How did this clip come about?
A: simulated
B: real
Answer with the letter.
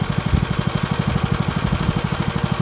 B